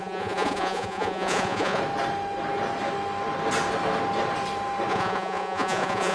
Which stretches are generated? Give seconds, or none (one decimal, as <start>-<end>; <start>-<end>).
0.0-1.8; 4.9-6.1